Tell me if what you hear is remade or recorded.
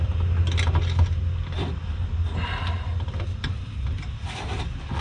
recorded